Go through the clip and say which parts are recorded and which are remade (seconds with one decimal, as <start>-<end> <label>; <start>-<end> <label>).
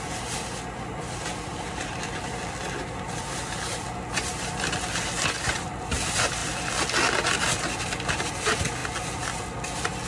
0.0-1.5 recorded; 1.5-2.3 remade; 2.3-10.1 recorded